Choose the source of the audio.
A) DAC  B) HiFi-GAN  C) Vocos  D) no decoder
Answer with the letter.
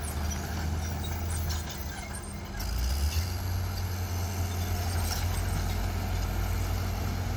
D